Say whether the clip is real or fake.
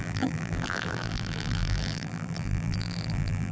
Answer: fake